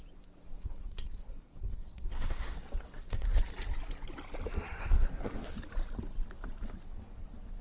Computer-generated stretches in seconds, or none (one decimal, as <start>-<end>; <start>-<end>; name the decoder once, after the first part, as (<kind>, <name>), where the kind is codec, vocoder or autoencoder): 0.6-3.3 (codec, SNAC); 4.8-5.5